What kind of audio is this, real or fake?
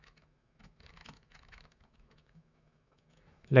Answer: fake